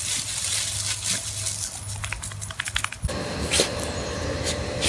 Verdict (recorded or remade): recorded